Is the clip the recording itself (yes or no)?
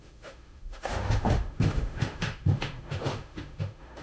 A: no